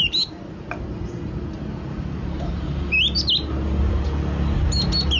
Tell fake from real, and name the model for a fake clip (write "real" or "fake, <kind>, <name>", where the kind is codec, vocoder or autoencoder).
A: real